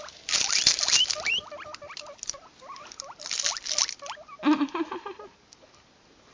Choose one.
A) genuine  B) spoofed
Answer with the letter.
A